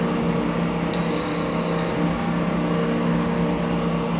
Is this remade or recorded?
recorded